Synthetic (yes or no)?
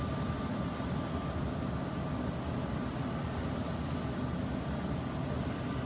no